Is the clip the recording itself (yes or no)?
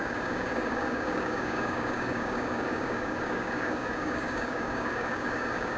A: no